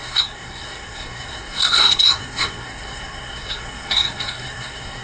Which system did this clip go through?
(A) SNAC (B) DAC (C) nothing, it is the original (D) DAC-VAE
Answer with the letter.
A